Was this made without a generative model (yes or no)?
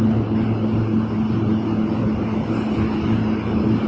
yes